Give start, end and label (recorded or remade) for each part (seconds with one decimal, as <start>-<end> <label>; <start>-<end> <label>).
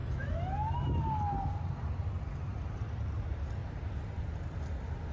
0.0-1.0 remade; 1.0-5.1 recorded